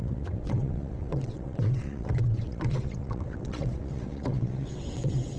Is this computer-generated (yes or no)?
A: yes